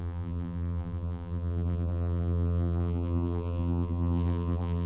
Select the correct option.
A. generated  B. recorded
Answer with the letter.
A